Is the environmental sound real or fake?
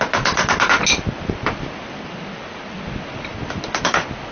real